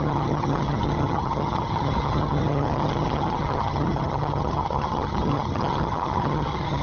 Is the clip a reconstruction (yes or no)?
yes